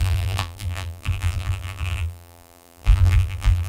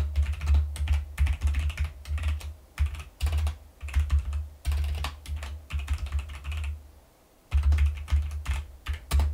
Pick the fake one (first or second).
first